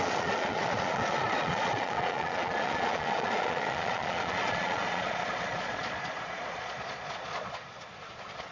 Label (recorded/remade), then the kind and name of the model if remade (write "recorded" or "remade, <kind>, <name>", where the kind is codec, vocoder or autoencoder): remade, vocoder, Vocos